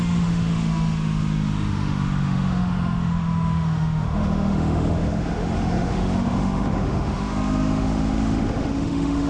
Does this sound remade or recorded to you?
remade